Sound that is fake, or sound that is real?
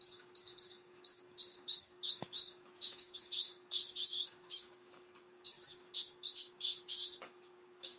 fake